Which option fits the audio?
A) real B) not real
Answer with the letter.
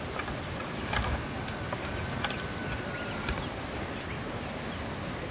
A